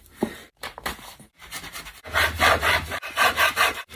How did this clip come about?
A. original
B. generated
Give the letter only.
B